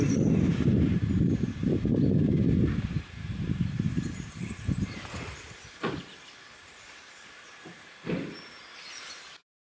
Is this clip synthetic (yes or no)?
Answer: yes